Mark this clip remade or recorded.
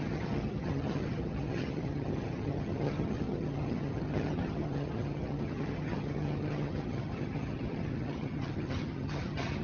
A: remade